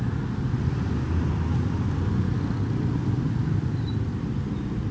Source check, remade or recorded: recorded